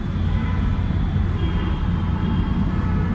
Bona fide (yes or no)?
yes